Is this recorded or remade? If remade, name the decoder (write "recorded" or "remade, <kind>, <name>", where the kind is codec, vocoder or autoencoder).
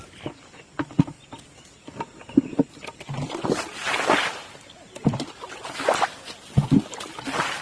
recorded